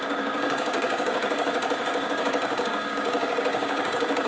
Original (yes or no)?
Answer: no